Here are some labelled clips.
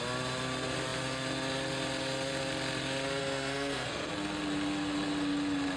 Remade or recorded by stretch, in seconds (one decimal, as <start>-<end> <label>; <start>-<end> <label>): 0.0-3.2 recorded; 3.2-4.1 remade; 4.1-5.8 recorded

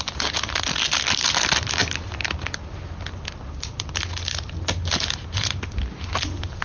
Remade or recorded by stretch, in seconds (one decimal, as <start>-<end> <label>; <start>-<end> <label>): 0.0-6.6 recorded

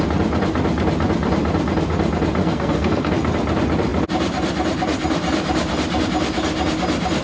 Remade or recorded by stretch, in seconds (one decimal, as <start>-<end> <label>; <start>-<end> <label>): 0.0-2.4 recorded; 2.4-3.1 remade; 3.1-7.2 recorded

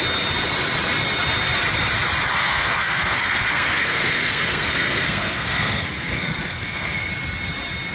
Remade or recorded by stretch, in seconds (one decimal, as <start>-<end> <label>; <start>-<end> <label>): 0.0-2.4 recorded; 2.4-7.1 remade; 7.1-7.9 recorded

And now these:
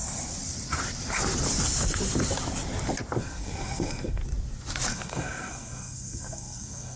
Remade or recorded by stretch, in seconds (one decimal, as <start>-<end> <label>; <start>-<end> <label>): 0.0-3.2 recorded; 3.2-4.2 remade; 4.2-4.9 recorded; 4.9-7.0 remade

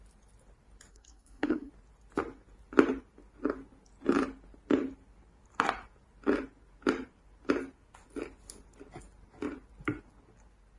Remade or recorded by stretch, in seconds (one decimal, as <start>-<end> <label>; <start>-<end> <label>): 0.0-0.9 recorded; 0.9-1.7 remade; 1.7-10.8 recorded

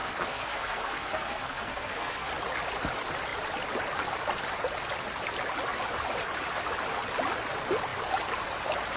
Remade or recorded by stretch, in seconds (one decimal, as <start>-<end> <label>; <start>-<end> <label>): 0.0-2.3 remade; 2.3-9.0 recorded